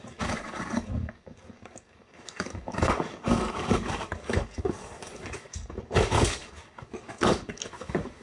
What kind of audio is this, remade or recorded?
remade